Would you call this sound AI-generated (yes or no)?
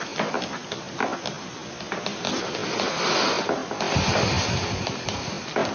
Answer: no